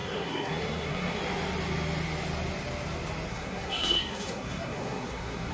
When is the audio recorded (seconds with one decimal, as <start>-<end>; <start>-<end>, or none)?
1.2-3.3